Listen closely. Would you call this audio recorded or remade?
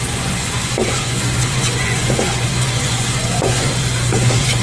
remade